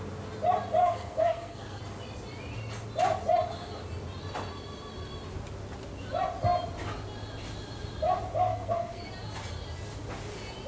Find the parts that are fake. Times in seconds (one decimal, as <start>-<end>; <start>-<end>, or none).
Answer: 0.8-1.8; 8.5-9.1

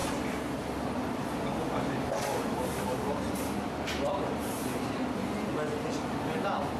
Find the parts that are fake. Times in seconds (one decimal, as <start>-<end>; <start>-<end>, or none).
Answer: none